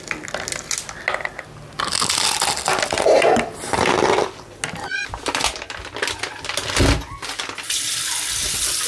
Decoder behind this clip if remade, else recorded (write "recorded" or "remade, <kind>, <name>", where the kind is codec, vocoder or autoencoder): recorded